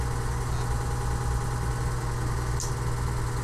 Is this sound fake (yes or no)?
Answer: no